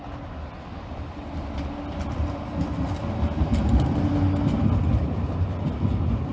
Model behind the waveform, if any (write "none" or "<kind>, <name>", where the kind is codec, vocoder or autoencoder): none